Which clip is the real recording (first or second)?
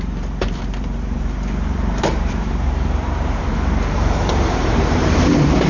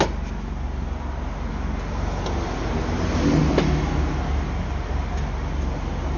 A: second